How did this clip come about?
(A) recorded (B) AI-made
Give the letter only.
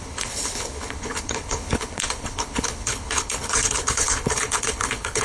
B